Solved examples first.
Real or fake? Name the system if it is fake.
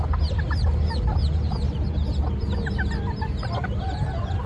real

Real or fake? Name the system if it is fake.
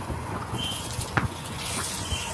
fake, vocoder, Vocos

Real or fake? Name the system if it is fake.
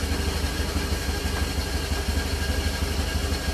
real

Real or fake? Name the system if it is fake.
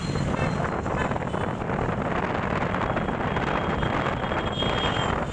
real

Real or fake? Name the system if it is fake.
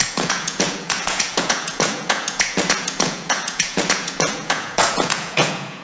fake, vocoder, Vocos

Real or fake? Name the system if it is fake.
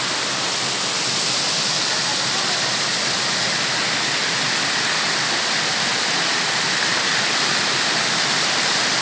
real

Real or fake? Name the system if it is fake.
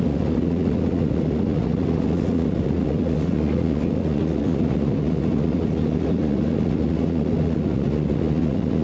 fake, vocoder, Vocos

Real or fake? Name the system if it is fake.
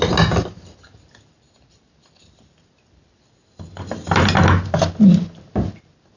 real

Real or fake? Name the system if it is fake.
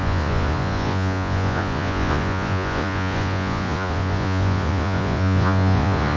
fake, vocoder, Vocos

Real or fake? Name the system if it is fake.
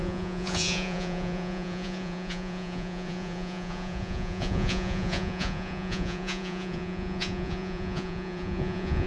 fake, vocoder, Vocos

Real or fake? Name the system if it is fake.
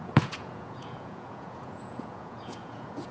fake, vocoder, Vocos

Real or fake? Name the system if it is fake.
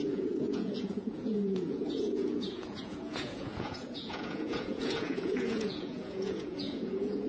fake, vocoder, Vocos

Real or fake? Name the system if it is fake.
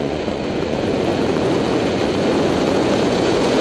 fake, vocoder, Vocos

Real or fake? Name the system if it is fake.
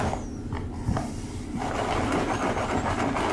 real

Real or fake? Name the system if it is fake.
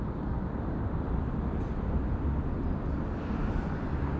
real